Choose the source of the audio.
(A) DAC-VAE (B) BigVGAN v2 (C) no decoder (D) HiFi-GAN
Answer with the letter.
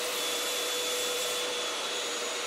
B